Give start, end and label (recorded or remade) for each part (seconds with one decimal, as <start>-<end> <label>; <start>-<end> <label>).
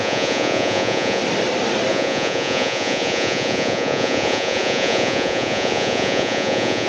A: 0.0-1.2 remade; 1.2-1.9 recorded; 1.9-6.9 remade